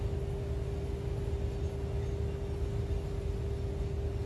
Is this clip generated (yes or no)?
no